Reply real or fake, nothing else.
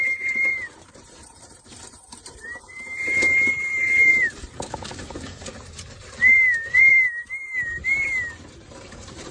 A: fake